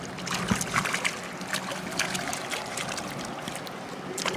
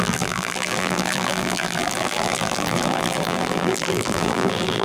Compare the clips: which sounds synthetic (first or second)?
second